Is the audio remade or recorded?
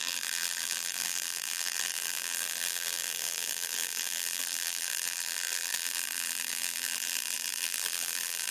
remade